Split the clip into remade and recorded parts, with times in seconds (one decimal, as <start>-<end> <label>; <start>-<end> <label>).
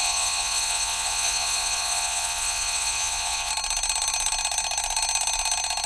0.0-3.5 remade; 3.5-5.9 recorded